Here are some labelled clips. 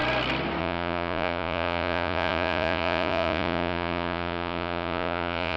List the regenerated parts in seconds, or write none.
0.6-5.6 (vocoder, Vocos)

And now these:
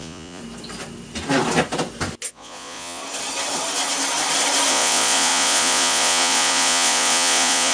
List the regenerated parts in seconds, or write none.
0.0-0.4 (vocoder, Vocos); 2.3-3.0; 4.7-7.7

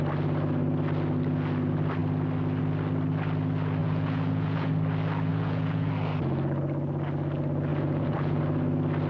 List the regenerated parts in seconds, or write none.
3.8-4.7 (vocoder, Vocos); 5.3-5.9; 7.7-8.4

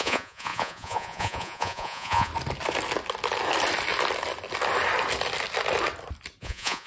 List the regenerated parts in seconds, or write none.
0.0-2.3 (vocoder, Vocos); 6.4-6.9

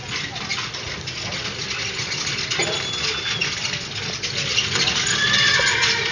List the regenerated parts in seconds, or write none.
none

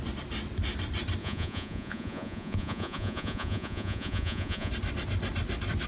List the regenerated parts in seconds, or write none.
1.2-4.7 (vocoder, Vocos)